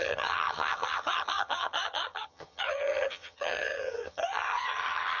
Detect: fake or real fake